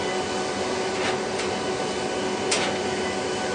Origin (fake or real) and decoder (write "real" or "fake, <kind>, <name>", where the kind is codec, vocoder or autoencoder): real